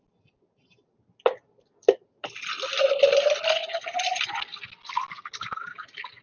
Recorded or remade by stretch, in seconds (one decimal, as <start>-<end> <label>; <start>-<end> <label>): 0.0-6.2 recorded